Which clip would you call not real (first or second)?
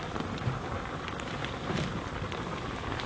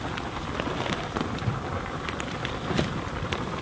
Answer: second